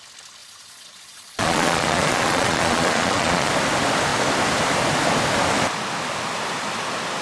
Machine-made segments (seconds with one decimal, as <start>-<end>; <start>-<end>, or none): 0.4-3.5